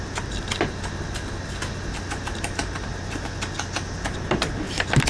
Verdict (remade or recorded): recorded